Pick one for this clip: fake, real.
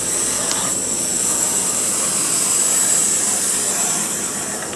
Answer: real